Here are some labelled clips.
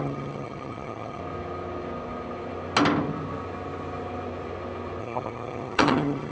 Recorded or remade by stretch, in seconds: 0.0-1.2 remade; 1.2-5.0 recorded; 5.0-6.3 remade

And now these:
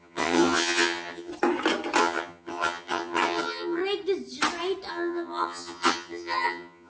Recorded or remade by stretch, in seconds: 0.0-1.3 remade; 1.3-2.0 recorded; 2.0-3.8 remade; 3.8-4.9 recorded; 4.9-6.9 remade